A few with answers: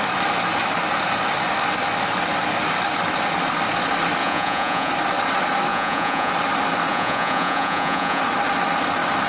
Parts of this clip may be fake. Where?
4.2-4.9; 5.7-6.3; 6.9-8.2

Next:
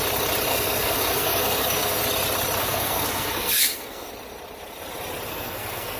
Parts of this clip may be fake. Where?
0.5-2.0; 2.6-4.1; 5.3-6.0